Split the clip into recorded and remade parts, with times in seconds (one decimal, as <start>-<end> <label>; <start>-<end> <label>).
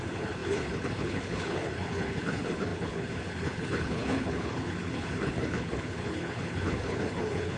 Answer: 0.0-7.6 remade